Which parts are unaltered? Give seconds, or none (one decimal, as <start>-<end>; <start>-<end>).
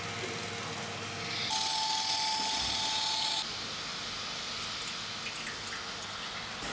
0.0-6.7